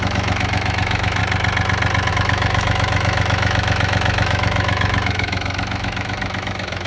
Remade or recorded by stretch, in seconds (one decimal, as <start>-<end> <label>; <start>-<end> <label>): 0.0-1.2 remade; 1.2-2.1 recorded; 2.1-6.9 remade